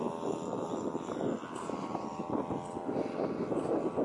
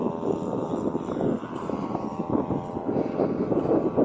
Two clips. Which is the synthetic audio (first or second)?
second